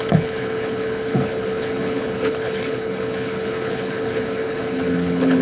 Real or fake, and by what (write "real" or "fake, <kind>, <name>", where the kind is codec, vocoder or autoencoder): fake, codec, HILCodec